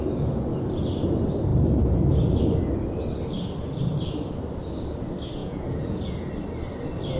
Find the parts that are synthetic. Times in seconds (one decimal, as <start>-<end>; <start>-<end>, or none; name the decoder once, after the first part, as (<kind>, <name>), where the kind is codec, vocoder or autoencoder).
5.4-6.3 (vocoder, Vocos)